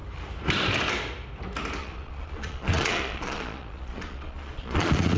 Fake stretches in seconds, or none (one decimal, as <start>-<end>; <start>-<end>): 1.8-5.2